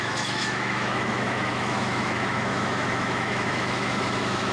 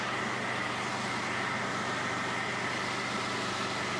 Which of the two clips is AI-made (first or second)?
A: first